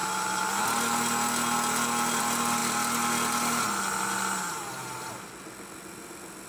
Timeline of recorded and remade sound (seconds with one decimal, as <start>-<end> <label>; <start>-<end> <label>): 0.0-6.5 recorded